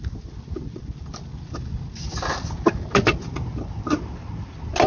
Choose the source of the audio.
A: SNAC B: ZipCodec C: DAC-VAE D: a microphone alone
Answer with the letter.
D